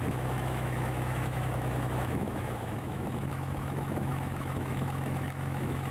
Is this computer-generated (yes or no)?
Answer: yes